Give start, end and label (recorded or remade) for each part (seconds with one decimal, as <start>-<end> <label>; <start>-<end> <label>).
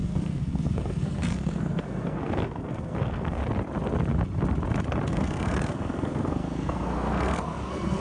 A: 0.0-3.4 remade; 3.4-5.1 recorded; 5.1-8.0 remade